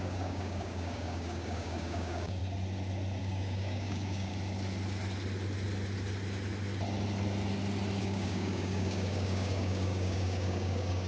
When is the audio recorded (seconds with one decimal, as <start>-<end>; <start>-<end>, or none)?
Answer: 2.4-3.2; 4.3-8.0